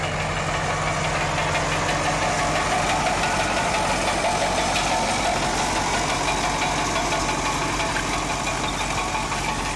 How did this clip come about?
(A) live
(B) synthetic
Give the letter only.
A